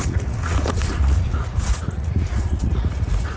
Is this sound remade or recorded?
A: remade